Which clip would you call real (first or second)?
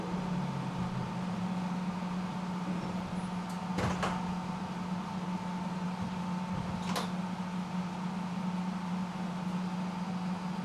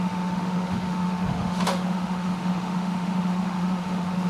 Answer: first